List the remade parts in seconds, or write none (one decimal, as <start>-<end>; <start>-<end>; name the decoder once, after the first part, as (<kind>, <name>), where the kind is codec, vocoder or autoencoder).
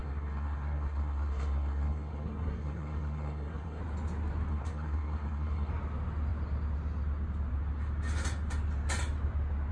0.0-3.8 (codec, SNAC); 4.5-5.7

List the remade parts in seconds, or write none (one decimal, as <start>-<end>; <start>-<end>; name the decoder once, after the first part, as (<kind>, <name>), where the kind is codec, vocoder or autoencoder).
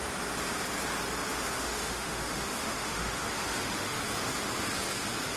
1.3-4.5 (autoencoder, DAC-VAE)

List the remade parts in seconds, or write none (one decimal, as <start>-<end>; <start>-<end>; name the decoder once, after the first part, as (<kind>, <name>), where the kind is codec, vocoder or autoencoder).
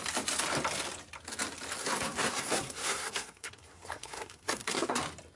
1.8-5.0 (codec, SNAC)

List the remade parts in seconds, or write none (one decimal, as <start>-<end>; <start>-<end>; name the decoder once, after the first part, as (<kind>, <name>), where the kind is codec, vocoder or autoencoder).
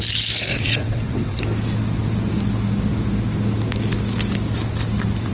0.5-1.4 (vocoder, WaveNeXt)